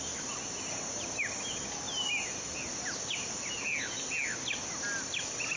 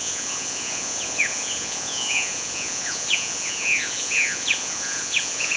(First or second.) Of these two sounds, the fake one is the second